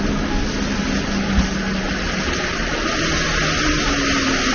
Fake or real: real